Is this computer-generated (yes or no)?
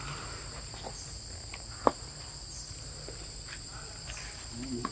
no